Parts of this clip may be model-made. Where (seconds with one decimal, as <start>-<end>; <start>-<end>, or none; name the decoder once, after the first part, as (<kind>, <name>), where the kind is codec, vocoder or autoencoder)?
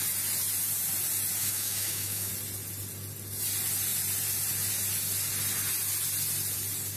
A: 1.4-2.3 (autoencoder, DAC-VAE)